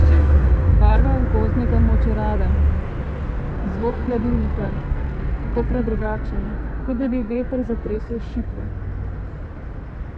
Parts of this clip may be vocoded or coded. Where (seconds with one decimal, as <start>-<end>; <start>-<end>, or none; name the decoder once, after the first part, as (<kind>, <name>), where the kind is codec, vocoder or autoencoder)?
0.0-1.0 (codec, SNAC); 3.5-8.7